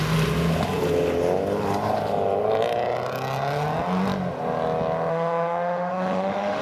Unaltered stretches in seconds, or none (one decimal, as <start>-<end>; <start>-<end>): 0.0-5.1